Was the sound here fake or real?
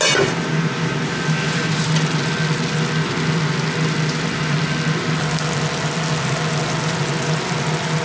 real